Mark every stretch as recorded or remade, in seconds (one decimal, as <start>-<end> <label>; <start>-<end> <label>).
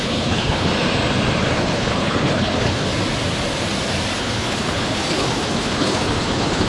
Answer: 0.0-0.7 remade; 0.7-1.4 recorded; 1.4-2.9 remade; 2.9-4.2 recorded; 4.2-6.7 remade